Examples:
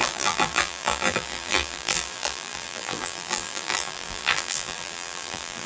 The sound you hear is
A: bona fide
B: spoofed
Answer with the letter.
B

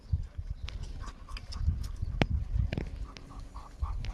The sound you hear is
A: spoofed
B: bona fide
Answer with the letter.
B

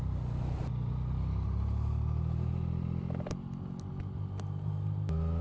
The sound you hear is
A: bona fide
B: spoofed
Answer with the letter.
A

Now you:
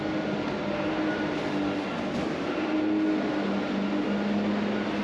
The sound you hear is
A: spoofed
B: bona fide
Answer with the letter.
B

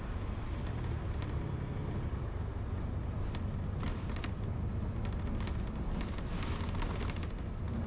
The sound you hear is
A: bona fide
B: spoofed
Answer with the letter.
B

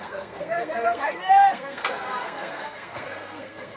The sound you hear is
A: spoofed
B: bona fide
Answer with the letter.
A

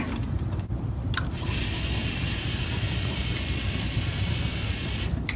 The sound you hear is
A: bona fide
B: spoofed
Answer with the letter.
B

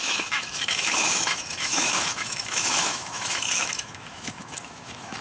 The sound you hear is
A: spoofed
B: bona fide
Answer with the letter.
A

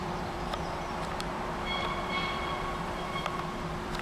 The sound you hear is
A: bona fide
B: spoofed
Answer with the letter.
B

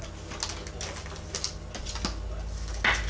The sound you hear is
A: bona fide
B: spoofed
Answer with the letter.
A